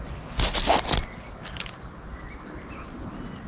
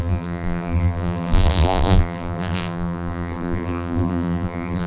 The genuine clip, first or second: first